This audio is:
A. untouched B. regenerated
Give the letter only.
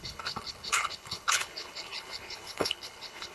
B